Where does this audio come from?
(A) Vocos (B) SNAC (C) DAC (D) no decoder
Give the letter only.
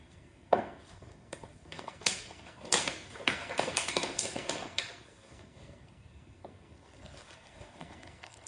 B